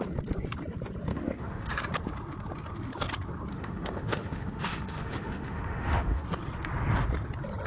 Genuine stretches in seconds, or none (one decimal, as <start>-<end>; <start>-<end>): 0.0-1.1; 1.7-3.5; 6.2-7.7